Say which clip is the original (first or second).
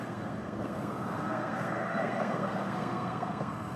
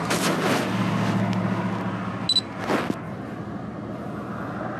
second